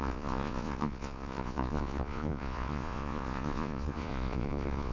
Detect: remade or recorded remade